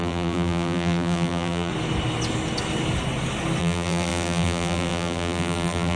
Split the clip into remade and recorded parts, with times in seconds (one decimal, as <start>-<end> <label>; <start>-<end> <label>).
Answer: 0.0-1.7 remade; 1.7-3.6 recorded; 3.6-6.0 remade